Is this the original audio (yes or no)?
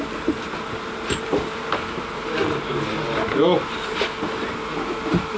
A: yes